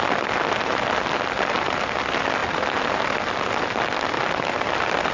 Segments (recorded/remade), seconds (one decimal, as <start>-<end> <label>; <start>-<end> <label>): 0.0-5.1 recorded